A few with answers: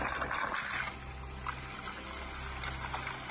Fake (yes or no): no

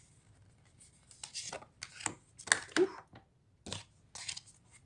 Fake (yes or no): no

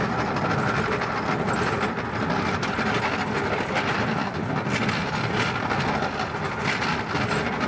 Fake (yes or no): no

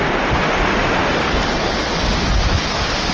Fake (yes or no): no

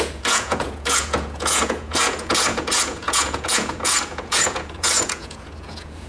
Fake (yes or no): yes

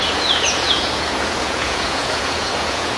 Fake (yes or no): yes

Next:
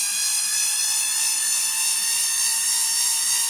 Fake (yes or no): no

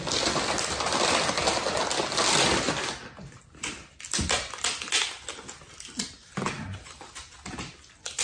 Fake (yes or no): no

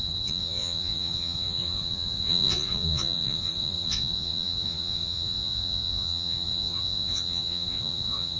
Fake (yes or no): yes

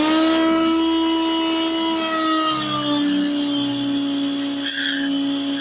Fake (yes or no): no